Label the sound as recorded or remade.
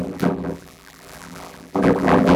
remade